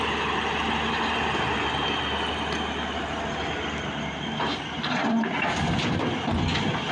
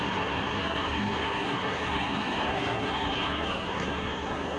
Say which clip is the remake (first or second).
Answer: second